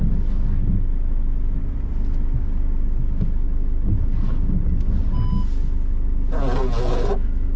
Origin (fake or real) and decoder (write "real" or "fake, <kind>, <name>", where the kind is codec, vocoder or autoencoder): real